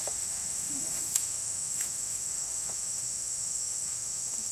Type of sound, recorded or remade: remade